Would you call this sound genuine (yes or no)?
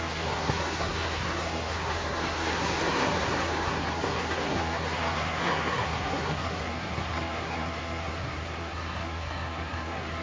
no